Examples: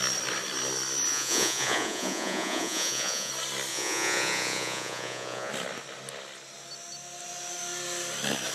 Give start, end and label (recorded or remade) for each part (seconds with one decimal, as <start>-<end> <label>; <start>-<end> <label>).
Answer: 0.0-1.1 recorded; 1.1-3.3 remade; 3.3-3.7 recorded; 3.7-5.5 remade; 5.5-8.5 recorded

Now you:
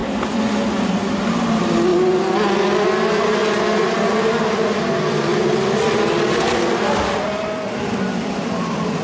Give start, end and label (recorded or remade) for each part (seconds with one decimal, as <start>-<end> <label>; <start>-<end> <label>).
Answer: 0.0-9.0 recorded

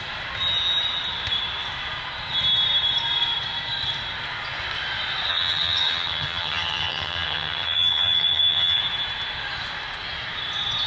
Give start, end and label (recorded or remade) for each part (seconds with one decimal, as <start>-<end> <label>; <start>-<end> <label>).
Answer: 0.0-5.3 recorded; 5.3-8.8 remade; 8.8-10.9 recorded

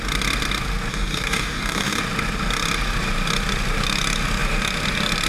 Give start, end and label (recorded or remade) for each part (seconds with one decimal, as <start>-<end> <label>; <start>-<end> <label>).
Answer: 0.0-0.9 recorded; 0.9-2.0 remade; 2.0-5.3 recorded

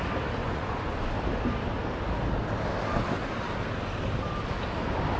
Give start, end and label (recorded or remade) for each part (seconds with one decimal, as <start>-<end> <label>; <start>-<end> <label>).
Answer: 0.0-0.4 recorded; 0.4-1.0 remade; 1.0-5.2 recorded

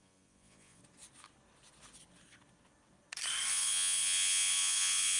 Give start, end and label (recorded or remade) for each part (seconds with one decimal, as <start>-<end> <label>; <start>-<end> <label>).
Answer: 0.0-0.8 remade; 0.8-3.5 recorded; 3.5-5.2 remade